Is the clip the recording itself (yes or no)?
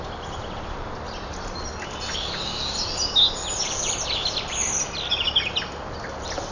yes